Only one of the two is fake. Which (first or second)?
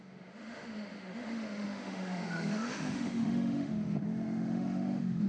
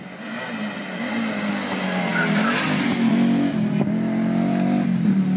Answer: first